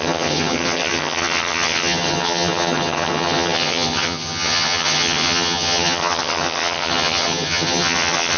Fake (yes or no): yes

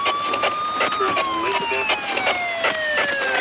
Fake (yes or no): no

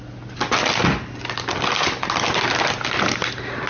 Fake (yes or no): no